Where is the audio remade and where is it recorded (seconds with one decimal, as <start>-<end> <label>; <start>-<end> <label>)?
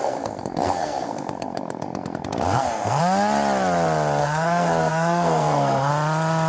0.0-3.0 remade; 3.0-4.2 recorded; 4.2-5.9 remade; 5.9-6.5 recorded